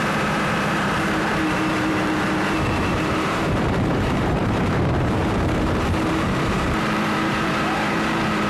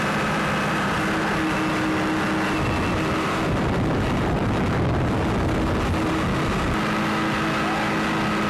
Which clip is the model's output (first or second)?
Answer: first